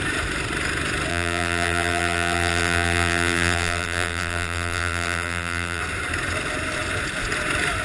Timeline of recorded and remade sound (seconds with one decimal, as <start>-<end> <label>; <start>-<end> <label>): 0.0-1.1 recorded; 1.1-5.8 remade; 5.8-7.8 recorded

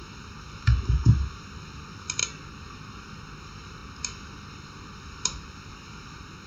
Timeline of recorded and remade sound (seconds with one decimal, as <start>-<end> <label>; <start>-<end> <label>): 0.0-2.2 remade; 2.2-3.4 recorded; 3.4-3.8 remade; 3.8-4.5 recorded; 4.5-6.5 remade

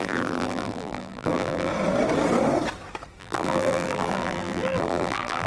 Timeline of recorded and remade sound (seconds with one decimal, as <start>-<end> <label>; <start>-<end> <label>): 0.0-1.7 remade; 1.7-3.2 recorded; 3.2-5.5 remade